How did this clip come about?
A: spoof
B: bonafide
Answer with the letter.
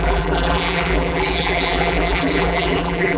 A